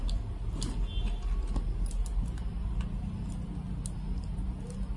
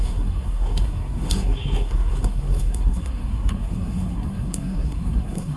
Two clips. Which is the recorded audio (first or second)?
first